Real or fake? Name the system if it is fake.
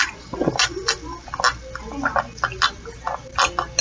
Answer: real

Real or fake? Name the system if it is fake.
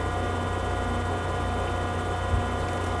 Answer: real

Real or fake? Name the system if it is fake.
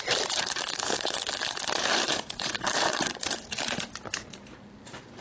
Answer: fake, vocoder, BigVGAN v2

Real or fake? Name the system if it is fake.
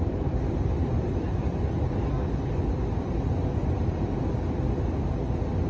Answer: real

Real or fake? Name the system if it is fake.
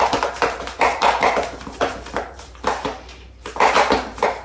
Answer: fake, vocoder, BigVGAN v2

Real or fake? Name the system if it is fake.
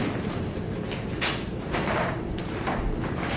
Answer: fake, vocoder, BigVGAN v2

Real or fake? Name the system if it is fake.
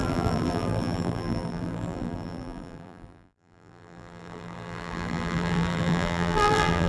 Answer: fake, vocoder, BigVGAN v2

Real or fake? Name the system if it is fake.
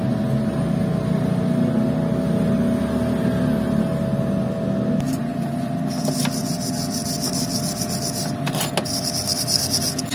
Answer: real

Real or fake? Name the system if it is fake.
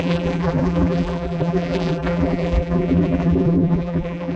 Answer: fake, vocoder, BigVGAN v2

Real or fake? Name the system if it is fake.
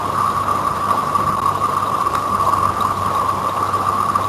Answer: fake, vocoder, BigVGAN v2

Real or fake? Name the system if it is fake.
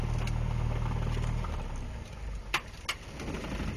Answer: real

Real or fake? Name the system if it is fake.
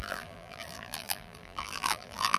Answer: fake, vocoder, BigVGAN v2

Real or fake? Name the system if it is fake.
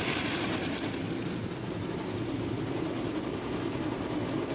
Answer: real